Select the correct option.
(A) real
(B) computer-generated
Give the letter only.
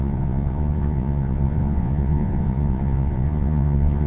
B